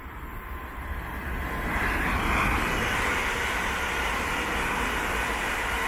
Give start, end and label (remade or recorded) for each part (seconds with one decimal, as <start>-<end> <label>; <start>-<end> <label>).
0.0-5.9 recorded